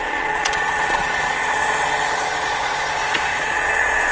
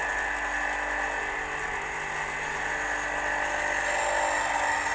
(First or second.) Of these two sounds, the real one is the second